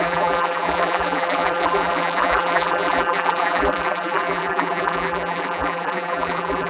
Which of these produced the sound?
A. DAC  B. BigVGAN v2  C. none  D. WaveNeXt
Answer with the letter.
B